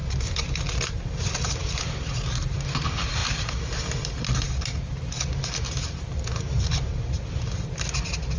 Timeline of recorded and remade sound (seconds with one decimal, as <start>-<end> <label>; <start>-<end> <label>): 0.0-2.1 remade; 2.1-8.4 recorded